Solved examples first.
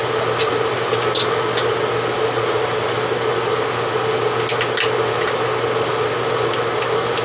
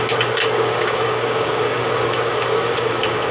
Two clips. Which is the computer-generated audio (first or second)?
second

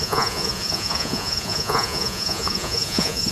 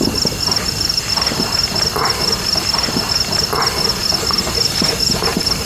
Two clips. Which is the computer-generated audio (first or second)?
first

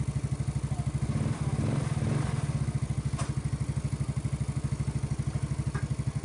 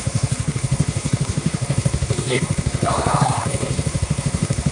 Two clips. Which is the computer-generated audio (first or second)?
second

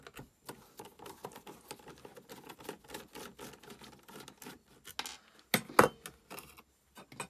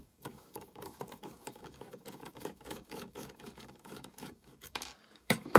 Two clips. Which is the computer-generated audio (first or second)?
second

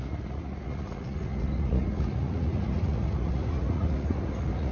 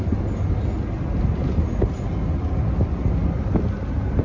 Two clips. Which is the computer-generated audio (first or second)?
first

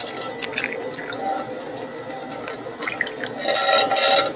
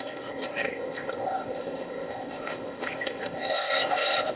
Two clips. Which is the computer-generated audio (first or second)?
second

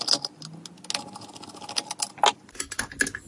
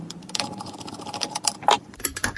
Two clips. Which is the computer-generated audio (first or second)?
second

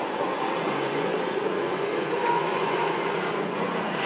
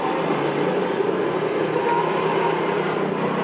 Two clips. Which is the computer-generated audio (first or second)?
first